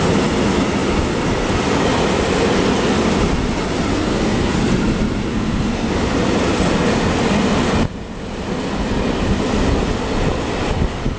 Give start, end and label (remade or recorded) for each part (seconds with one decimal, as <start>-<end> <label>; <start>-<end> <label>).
0.0-3.9 recorded; 3.9-4.5 remade; 4.5-5.3 recorded; 5.3-5.9 remade; 5.9-11.2 recorded